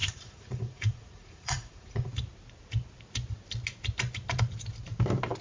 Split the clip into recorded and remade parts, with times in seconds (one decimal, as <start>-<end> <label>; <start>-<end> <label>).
0.0-2.1 remade; 2.1-5.4 recorded